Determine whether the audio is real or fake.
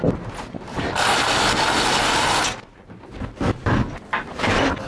fake